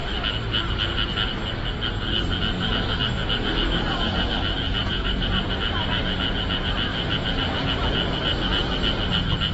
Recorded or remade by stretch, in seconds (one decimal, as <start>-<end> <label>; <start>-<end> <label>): 0.0-3.6 recorded; 3.6-4.3 remade; 4.3-4.8 recorded; 4.8-5.5 remade; 5.5-9.5 recorded